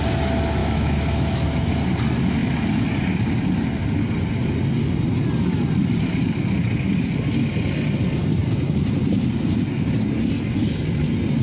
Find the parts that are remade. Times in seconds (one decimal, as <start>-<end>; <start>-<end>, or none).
0.6-1.7